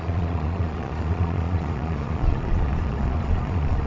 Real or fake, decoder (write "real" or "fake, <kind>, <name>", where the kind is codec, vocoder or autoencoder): fake, vocoder, Vocos